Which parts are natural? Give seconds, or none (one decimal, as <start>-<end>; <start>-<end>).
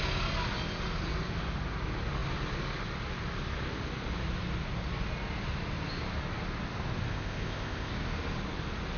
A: 0.0-7.1; 7.9-9.0